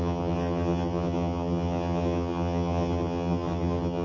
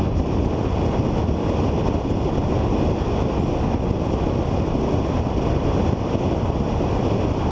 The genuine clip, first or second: second